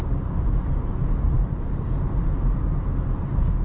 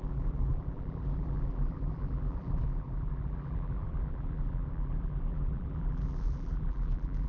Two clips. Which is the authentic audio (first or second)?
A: first